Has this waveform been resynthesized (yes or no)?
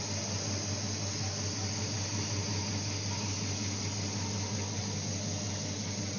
no